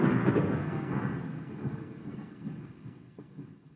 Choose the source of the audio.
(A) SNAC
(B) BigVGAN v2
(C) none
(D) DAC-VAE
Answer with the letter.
A